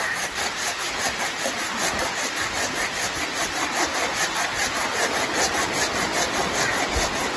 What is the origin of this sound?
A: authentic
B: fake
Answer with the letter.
A